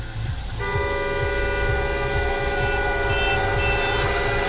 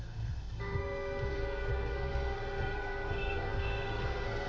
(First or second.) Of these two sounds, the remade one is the second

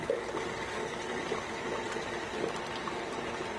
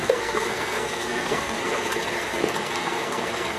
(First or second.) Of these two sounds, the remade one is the second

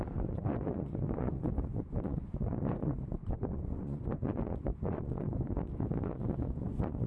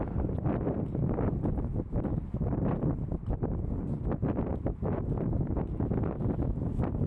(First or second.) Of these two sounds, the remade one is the first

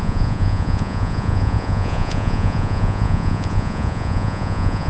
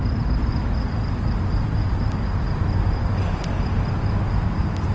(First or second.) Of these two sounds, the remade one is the first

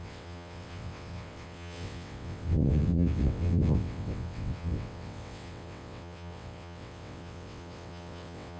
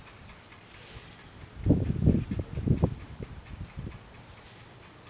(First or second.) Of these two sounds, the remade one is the first